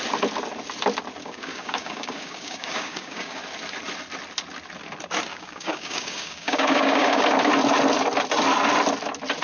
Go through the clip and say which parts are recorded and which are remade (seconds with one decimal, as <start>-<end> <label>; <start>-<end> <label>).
0.0-1.2 recorded; 1.2-3.4 remade; 3.4-5.3 recorded; 5.3-7.2 remade; 7.2-9.4 recorded